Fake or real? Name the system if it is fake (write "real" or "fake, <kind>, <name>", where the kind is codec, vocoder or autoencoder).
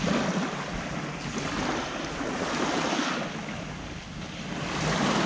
real